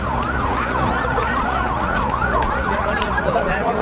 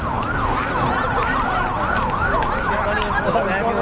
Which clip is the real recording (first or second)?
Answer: second